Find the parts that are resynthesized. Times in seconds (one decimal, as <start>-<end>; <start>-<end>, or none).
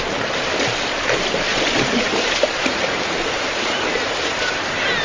1.5-4.5